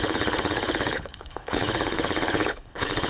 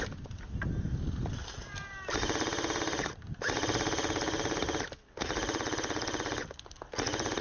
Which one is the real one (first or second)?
second